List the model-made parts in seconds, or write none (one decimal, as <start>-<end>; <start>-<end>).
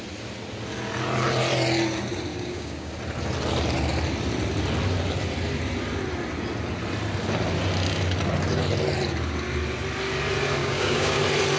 2.3-2.9; 10.6-11.2